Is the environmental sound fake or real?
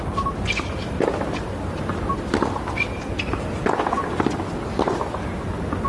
real